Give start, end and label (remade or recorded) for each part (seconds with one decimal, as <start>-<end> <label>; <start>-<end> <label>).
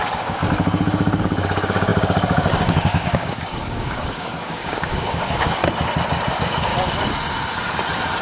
0.0-0.4 remade; 0.4-1.2 recorded; 1.2-5.6 remade; 5.6-6.3 recorded; 6.3-6.7 remade; 6.7-8.2 recorded